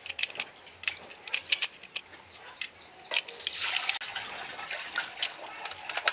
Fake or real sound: real